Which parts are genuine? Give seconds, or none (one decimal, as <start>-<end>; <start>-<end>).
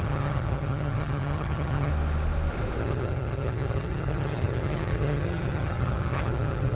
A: 1.9-2.8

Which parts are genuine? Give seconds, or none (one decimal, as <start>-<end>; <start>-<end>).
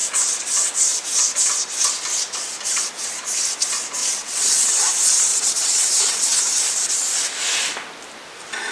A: 0.0-4.0; 4.8-5.3; 6.4-8.7